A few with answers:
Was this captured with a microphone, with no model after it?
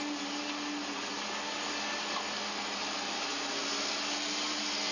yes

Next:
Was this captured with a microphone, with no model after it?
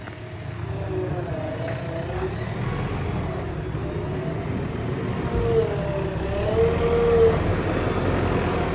yes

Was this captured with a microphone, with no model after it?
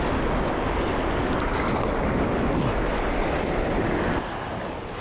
yes